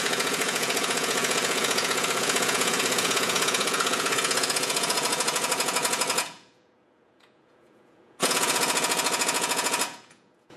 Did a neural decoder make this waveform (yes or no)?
yes